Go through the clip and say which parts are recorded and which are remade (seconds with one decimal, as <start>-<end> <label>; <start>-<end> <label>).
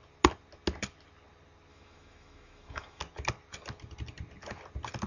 0.0-1.7 recorded; 1.7-3.0 remade; 3.0-5.1 recorded